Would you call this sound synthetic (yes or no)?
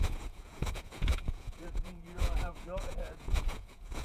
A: yes